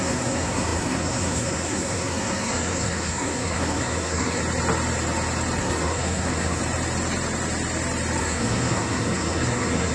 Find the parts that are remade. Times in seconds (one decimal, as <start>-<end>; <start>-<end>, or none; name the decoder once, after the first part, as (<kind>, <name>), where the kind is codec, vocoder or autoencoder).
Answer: 0.0-4.4 (codec, SNAC); 5.6-6.6; 8.2-9.9